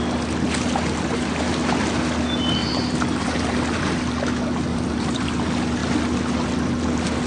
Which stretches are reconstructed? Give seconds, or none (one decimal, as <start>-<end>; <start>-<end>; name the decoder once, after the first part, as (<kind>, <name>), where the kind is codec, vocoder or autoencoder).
2.6-4.0 (vocoder, BigVGAN v2); 4.7-5.2